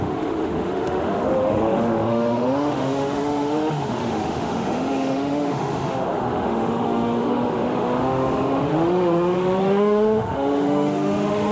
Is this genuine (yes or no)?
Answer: no